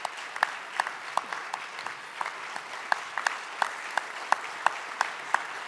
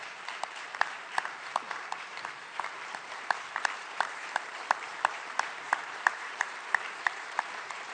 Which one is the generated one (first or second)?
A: second